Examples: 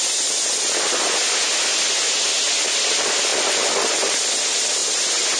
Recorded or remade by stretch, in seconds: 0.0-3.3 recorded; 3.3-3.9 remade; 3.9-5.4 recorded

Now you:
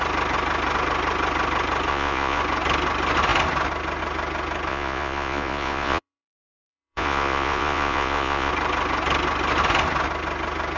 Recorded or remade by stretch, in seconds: 0.0-1.9 recorded; 1.9-2.4 remade; 2.4-4.7 recorded; 4.7-8.5 remade; 8.5-10.8 recorded

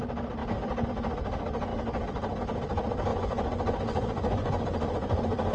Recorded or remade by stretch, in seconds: 0.0-3.1 recorded; 3.1-5.5 remade

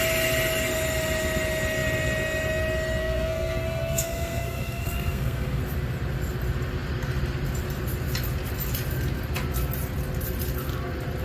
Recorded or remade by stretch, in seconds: 0.0-3.0 recorded; 3.0-5.6 remade; 5.6-11.2 recorded

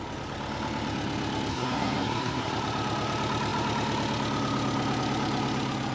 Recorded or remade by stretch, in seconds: 0.0-1.5 recorded; 1.5-2.5 remade; 2.5-5.9 recorded